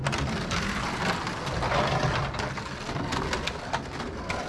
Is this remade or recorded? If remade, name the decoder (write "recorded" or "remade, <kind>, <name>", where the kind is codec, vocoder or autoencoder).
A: recorded